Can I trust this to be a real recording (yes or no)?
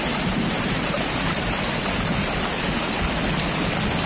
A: yes